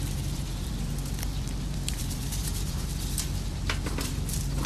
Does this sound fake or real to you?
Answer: fake